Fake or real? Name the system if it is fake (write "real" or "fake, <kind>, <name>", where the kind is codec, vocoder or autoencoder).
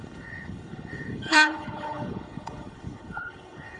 fake, codec, HILCodec